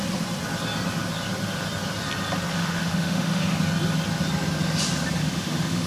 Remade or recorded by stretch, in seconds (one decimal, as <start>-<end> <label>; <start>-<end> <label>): 0.0-2.6 recorded; 2.6-3.6 remade; 3.6-5.2 recorded; 5.2-5.9 remade